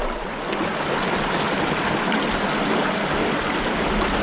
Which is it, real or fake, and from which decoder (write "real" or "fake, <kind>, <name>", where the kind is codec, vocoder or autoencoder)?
real